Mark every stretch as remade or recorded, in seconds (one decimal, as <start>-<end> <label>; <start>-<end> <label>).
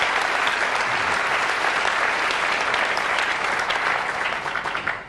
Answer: 0.0-0.5 recorded; 0.5-1.6 remade; 1.6-5.1 recorded